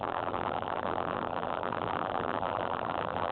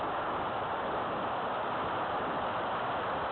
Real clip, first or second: second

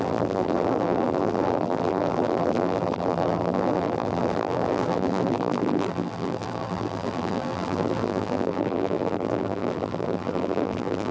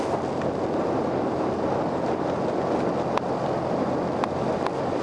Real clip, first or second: second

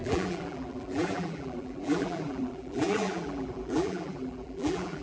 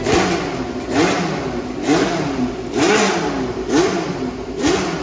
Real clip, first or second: second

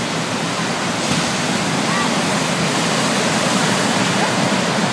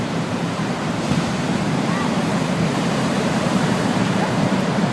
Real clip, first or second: first